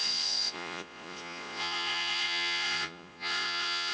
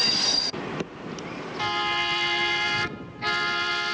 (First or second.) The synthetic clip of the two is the first